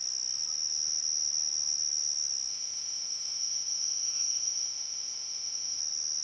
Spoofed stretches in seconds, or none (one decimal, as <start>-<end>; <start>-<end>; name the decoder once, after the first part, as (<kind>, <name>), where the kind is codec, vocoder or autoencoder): 2.5-5.8 (autoencoder, DAC-VAE)